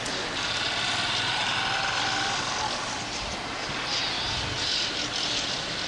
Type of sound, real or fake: real